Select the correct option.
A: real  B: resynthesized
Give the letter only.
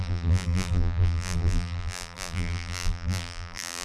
B